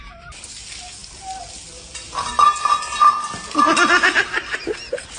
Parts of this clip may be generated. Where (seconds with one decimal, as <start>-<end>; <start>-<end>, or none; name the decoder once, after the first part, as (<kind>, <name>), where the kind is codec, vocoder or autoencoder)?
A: none